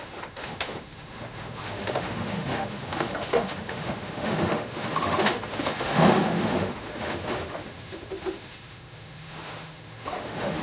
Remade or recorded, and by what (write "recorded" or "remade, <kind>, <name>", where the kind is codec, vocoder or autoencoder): remade, autoencoder, DAC-VAE